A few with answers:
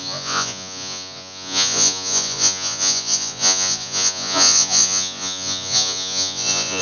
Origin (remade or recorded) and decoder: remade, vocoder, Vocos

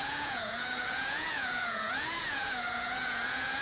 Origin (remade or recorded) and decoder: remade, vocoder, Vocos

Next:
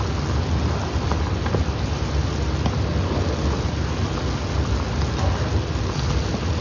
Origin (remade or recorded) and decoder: recorded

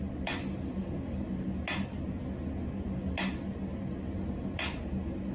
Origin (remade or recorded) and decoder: recorded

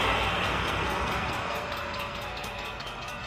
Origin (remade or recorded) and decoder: remade, codec, SNAC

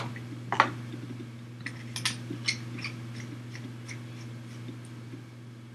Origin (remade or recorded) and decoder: recorded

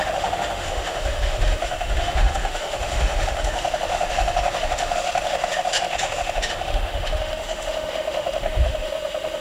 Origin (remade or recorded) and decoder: remade, autoencoder, DAC-VAE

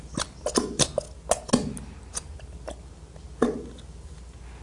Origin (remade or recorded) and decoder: recorded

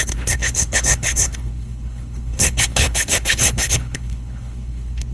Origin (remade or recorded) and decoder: remade, codec, HILCodec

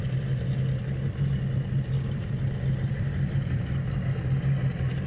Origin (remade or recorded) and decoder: recorded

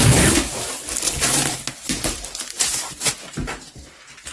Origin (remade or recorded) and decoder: recorded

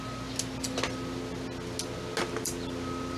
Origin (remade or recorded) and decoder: recorded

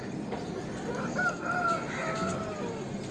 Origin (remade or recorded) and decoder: recorded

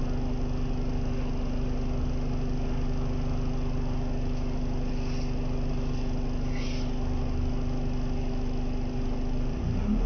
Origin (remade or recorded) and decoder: recorded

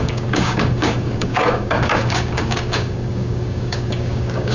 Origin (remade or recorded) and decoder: remade, codec, DAC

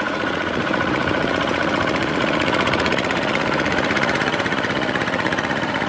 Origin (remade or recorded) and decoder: remade, vocoder, Vocos